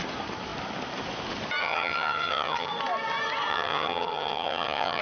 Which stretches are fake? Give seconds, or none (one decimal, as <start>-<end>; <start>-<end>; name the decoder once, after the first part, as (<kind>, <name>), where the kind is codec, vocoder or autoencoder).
1.6-2.7 (vocoder, HiFi-GAN); 3.5-5.0